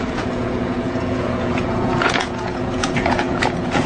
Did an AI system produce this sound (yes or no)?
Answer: yes